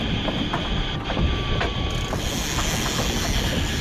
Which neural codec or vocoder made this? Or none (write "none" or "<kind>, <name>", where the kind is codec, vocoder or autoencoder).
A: none